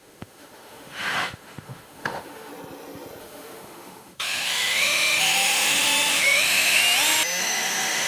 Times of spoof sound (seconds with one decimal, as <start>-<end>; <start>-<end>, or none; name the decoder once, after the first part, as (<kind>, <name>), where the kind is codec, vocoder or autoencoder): 0.0-2.5 (autoencoder, DAC-VAE); 3.2-6.8; 7.4-8.1